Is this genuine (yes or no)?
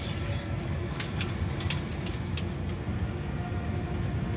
yes